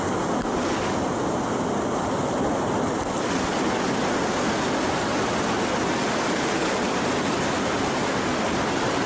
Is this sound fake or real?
real